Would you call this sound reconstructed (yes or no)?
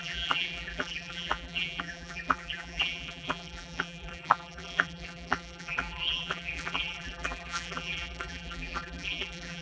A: yes